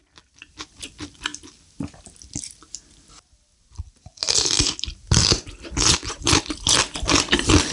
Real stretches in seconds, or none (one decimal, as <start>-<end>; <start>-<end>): 1.3-5.9